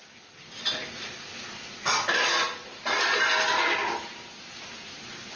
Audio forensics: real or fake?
real